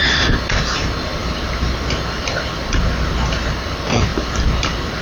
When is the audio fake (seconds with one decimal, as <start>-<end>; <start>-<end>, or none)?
0.0-5.0